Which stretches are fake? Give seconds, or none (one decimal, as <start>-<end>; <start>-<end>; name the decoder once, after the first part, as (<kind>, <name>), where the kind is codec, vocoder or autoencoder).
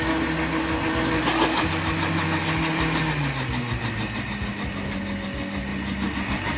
none